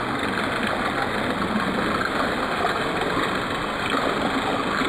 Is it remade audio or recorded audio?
recorded